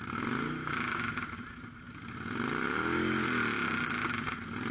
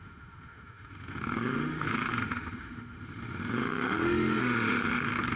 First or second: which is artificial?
second